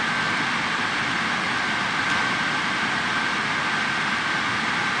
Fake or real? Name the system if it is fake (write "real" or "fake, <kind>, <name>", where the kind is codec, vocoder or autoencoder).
real